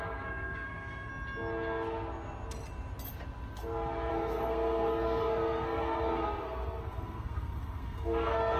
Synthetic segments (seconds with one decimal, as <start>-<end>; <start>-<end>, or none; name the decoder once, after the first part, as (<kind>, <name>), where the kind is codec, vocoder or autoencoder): 0.0-1.1 (codec, SNAC); 4.1-8.6